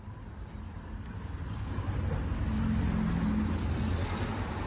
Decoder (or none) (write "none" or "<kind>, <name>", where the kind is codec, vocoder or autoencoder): none